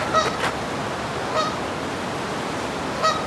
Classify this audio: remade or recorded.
recorded